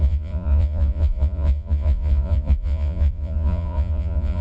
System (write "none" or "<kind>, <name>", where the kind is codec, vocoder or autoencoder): vocoder, Vocos